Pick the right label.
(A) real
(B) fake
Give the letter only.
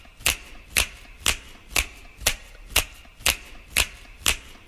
A